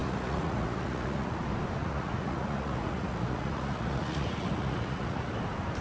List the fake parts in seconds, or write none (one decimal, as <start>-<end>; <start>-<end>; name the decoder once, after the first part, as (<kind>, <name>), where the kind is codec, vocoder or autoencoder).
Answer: 0.0-1.4 (vocoder, Vocos); 1.8-5.3